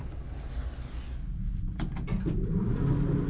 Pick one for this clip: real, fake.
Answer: real